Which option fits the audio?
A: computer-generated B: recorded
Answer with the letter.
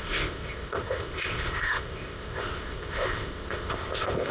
A